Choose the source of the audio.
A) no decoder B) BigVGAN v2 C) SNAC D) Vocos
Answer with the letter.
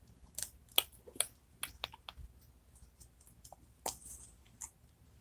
A